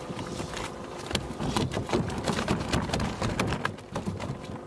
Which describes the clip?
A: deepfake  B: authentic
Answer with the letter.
B